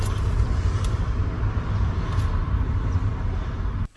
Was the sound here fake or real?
real